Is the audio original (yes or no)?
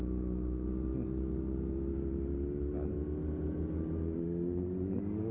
yes